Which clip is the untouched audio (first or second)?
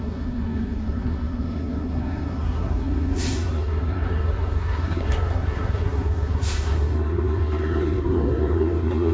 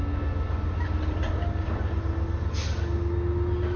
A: second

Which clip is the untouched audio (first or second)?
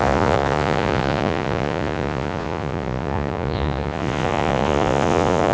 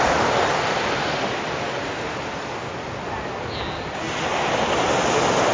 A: second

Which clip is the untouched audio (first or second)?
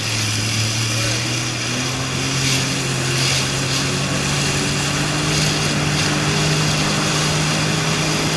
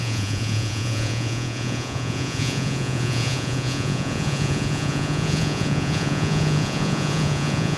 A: first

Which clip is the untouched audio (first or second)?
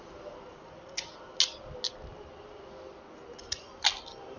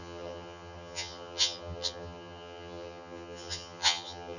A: first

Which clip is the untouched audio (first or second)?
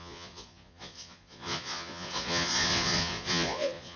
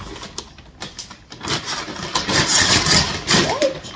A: second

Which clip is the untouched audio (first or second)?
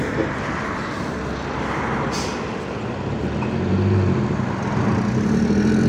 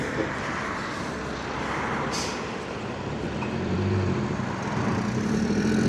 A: first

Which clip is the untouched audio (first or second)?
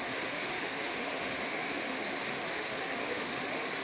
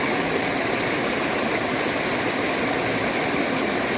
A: second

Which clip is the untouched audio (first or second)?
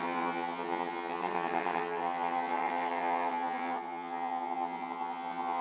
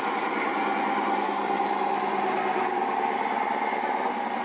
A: second